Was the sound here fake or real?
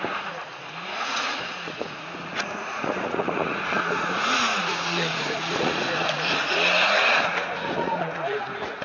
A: fake